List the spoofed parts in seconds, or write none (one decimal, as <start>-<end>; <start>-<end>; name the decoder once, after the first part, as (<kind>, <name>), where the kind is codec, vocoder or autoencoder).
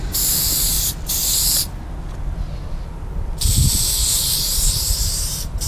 0.0-0.7 (vocoder, BigVGAN v2); 4.1-5.7